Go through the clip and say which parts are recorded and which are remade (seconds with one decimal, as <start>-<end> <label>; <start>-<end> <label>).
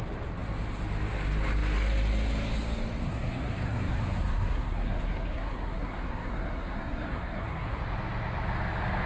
0.0-3.0 recorded; 3.0-7.8 remade; 7.8-9.1 recorded